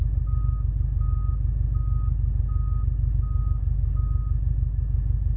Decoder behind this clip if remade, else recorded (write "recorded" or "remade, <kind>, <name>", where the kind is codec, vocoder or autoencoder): recorded